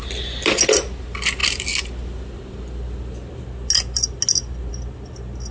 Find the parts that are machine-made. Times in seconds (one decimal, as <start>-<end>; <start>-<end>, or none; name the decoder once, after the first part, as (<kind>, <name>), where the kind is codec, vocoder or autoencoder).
none